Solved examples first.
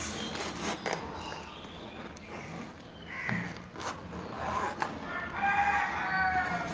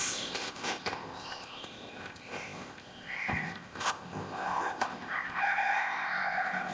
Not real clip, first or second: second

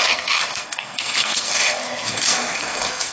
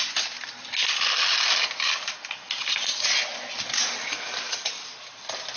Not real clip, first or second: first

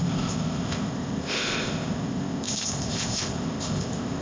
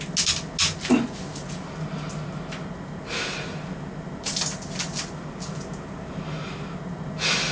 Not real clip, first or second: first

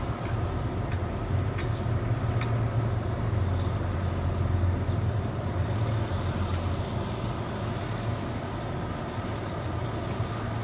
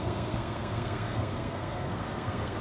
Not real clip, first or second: second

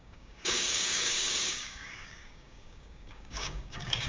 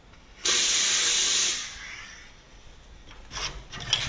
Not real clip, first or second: first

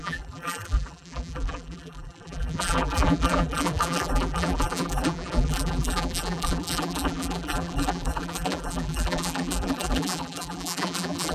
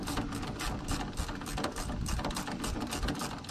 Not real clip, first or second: first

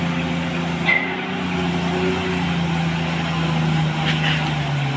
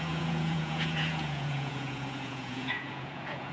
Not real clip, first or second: second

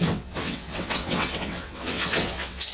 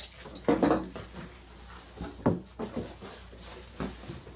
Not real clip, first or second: first